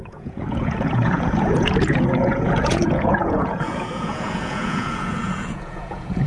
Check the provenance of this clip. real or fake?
fake